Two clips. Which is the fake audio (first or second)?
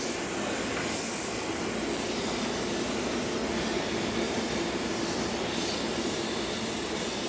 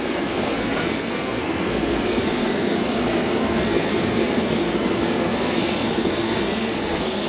second